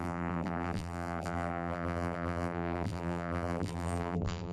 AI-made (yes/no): yes